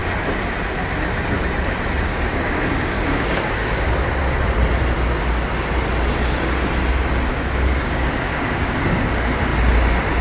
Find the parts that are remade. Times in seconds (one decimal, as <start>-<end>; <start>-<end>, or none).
2.1-3.9; 7.3-9.0